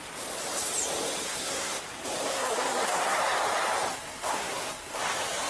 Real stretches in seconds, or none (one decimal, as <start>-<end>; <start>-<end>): 0.0-1.3; 1.8-2.3; 3.2-3.9; 5.0-5.5